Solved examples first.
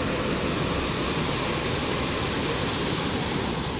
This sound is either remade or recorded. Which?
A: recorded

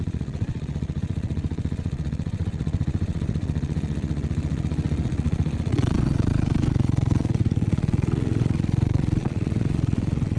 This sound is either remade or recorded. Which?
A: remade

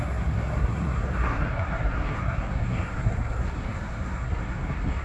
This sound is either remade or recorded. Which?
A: remade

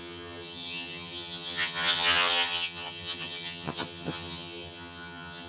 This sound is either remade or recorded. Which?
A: remade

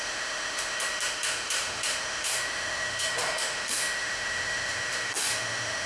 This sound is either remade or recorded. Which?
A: remade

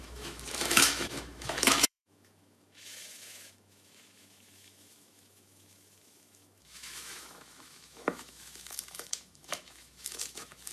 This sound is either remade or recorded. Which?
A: remade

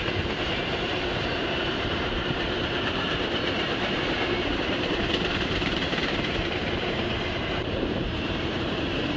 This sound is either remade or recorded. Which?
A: remade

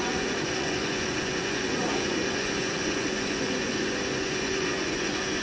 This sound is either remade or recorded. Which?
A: remade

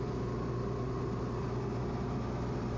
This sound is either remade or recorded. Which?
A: recorded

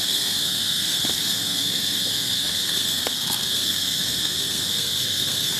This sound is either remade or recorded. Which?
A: remade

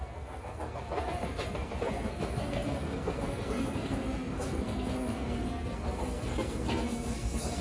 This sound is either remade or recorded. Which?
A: remade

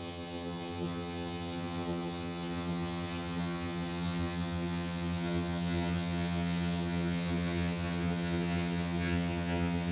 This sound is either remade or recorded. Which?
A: remade